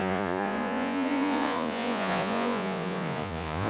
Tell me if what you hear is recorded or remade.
remade